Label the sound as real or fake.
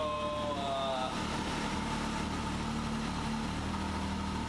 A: real